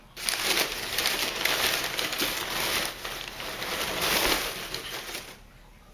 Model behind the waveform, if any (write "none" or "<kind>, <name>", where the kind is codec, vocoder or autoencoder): none